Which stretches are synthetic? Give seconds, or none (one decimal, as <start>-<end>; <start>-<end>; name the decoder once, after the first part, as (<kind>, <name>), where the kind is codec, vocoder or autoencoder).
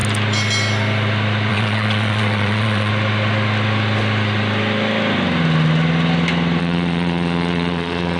1.5-2.9 (vocoder, WaveNeXt); 6.6-8.2